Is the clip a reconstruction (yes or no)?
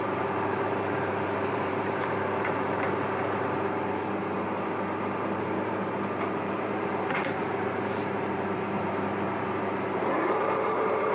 yes